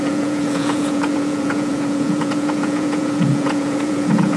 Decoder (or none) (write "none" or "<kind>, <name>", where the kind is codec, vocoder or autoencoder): vocoder, Vocos